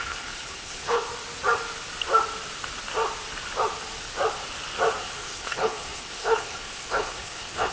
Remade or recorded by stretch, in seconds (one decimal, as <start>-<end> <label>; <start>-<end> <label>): 0.0-1.1 remade; 1.1-5.0 recorded; 5.0-7.7 remade